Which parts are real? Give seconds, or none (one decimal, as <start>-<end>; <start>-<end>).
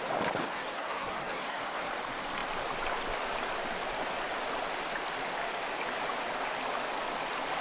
0.0-0.4; 1.9-7.6